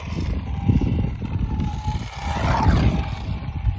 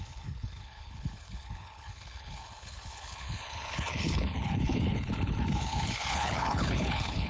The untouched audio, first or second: first